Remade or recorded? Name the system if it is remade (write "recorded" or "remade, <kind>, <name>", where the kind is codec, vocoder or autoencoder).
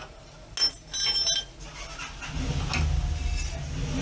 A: recorded